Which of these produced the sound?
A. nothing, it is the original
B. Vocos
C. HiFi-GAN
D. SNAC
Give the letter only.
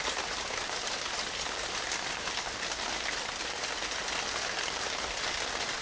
A